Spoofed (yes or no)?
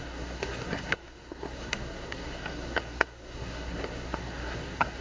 yes